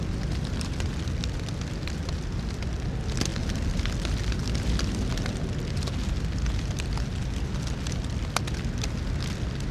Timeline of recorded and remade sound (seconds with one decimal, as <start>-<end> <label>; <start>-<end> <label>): 0.0-9.7 recorded